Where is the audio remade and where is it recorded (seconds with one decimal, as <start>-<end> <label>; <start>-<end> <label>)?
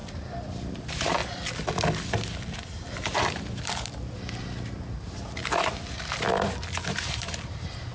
0.0-0.7 recorded; 0.7-1.2 remade; 1.2-2.9 recorded; 2.9-5.4 remade; 5.4-6.9 recorded; 6.9-7.9 remade